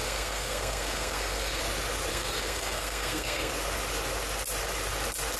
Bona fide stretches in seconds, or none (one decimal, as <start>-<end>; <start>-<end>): 1.6-2.1; 3.5-5.4